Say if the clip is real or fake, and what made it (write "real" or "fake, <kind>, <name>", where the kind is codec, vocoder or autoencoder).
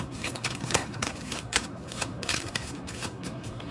fake, codec, SNAC